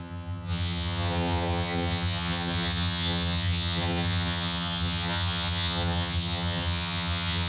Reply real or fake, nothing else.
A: fake